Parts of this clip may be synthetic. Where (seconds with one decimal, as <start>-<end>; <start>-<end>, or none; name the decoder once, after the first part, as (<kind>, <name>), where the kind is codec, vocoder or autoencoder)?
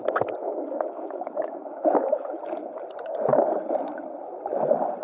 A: 0.4-2.4 (autoencoder, DAC-VAE)